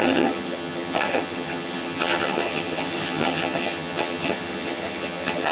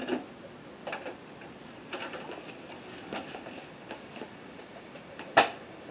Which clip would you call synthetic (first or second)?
first